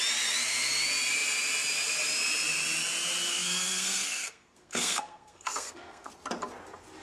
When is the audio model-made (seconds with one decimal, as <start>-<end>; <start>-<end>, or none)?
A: 3.3-6.1